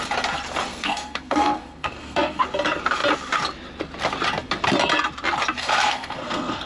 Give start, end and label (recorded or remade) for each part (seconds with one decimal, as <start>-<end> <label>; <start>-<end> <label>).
0.0-0.7 recorded; 0.7-2.4 remade; 2.4-5.6 recorded; 5.6-6.7 remade

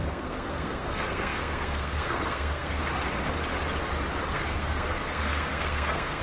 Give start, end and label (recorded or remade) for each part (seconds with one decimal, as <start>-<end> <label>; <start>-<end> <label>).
0.0-2.8 remade; 2.8-4.3 recorded; 4.3-6.2 remade

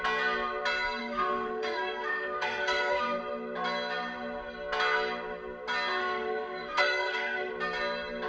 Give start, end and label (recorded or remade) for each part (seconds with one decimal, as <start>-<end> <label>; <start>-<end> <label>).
0.0-1.0 recorded; 1.0-3.2 remade; 3.2-6.0 recorded; 6.0-7.5 remade; 7.5-8.3 recorded

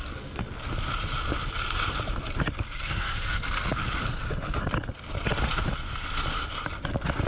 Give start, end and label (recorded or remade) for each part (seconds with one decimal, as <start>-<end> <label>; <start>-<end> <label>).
0.0-0.5 remade; 0.5-2.8 recorded; 2.8-3.8 remade; 3.8-7.3 recorded

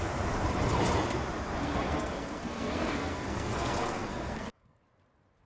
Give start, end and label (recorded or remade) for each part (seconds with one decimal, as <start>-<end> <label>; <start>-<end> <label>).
0.0-1.6 recorded; 1.6-4.8 remade; 4.8-5.5 recorded

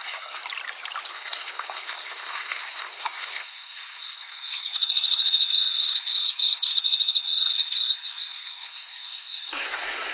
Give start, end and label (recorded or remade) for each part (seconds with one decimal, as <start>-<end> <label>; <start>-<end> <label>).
0.0-0.4 remade; 0.4-1.1 recorded; 1.1-10.1 remade